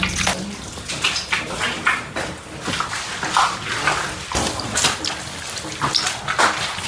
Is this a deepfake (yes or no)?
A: no